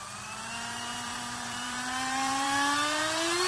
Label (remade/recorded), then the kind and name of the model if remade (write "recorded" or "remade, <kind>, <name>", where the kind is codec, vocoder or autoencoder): remade, vocoder, BigVGAN v2